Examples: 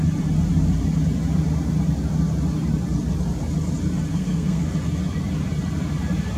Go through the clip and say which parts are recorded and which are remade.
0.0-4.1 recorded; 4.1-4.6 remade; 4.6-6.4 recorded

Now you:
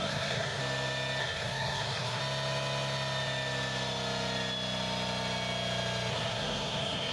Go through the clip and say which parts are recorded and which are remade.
0.0-0.6 remade; 0.6-1.2 recorded; 1.2-2.2 remade; 2.2-6.1 recorded; 6.1-7.1 remade